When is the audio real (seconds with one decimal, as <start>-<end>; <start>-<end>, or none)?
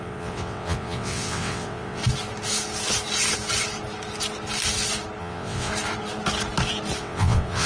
2.0-5.2; 5.7-7.0